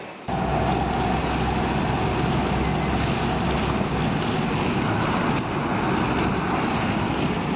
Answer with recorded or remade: recorded